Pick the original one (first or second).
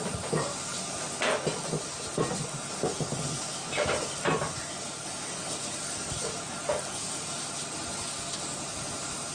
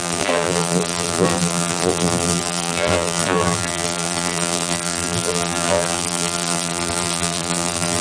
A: first